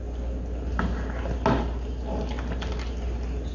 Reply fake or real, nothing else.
real